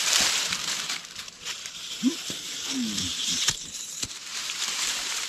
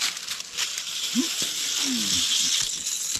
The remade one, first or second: first